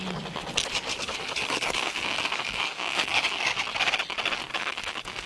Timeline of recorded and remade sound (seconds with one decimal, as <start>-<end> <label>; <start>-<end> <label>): 0.0-0.9 recorded; 0.9-3.5 remade; 3.5-4.5 recorded; 4.5-5.3 remade